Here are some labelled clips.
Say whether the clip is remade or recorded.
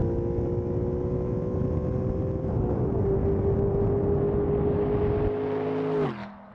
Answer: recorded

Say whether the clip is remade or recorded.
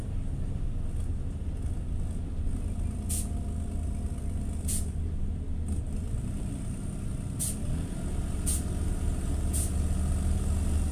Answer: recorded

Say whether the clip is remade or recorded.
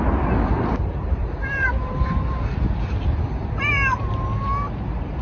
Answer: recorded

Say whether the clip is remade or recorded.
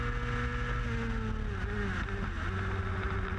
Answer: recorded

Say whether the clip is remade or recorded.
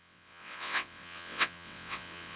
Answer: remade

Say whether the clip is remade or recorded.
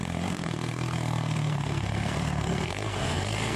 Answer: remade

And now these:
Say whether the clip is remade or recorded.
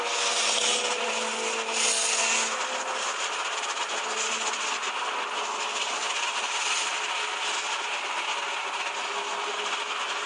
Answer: recorded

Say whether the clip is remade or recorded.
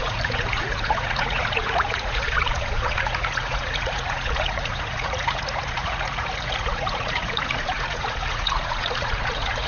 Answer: remade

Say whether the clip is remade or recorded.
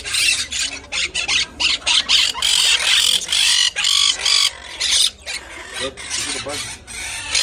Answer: recorded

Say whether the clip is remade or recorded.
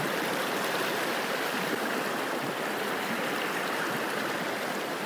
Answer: recorded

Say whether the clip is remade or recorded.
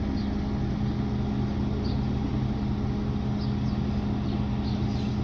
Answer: recorded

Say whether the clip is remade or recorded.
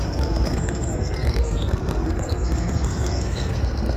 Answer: remade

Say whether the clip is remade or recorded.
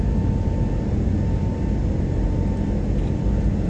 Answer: recorded